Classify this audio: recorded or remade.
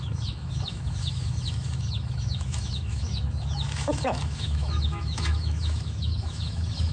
remade